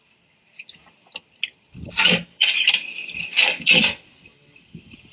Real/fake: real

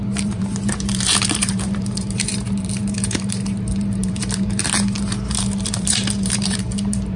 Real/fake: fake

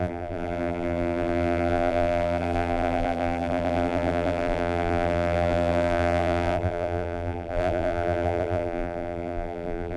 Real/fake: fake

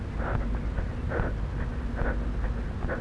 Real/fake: real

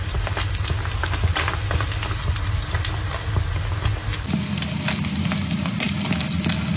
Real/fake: real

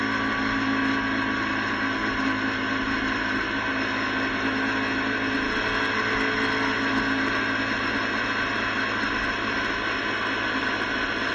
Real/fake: real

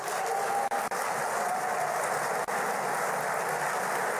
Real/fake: real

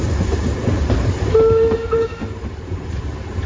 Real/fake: fake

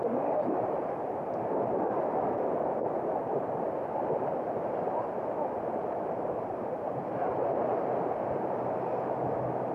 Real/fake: fake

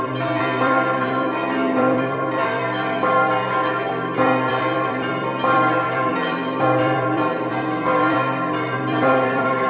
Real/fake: fake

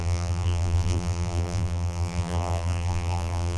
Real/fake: fake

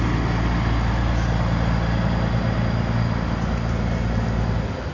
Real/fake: real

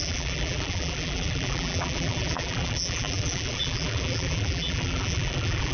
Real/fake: fake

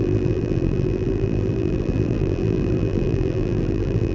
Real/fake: fake